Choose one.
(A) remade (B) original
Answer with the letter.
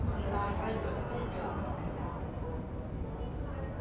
B